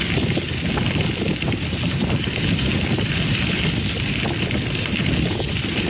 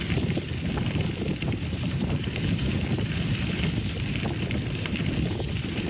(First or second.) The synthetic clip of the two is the second